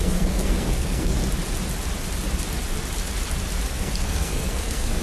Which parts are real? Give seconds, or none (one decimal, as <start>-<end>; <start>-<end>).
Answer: 1.2-3.7